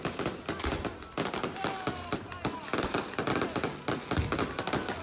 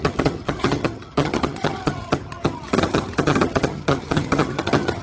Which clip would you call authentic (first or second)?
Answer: first